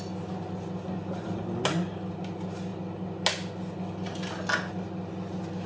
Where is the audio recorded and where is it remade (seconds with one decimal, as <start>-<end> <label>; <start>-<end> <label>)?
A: 0.0-5.7 recorded